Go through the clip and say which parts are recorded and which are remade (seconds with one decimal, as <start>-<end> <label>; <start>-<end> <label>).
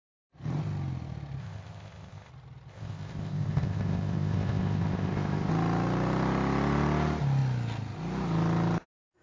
0.0-1.4 recorded; 1.4-2.3 remade; 2.3-2.7 recorded; 2.7-5.5 remade; 5.5-9.2 recorded